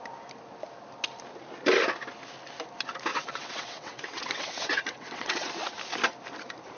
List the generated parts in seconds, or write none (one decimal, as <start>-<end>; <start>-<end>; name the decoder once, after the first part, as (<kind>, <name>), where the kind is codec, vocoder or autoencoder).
3.1-5.5 (vocoder, WaveNeXt)